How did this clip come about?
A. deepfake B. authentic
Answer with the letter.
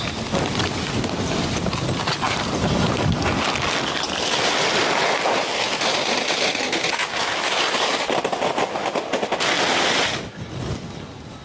B